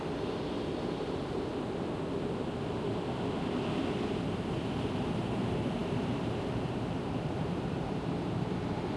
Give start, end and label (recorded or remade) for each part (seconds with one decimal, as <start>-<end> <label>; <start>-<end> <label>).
0.0-1.5 remade; 1.5-4.5 recorded; 4.5-9.0 remade